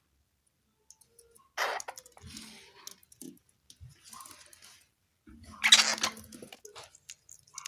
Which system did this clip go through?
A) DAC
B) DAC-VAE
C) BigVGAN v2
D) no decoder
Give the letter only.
D